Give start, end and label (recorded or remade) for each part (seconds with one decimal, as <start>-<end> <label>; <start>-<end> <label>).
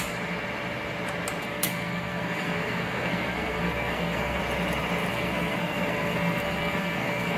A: 0.0-1.4 recorded; 1.4-4.4 remade; 4.4-5.1 recorded; 5.1-7.4 remade